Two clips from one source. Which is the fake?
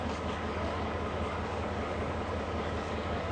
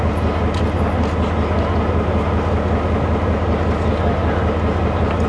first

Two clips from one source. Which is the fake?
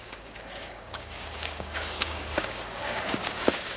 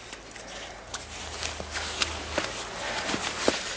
first